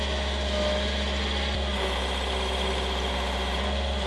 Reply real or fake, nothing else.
real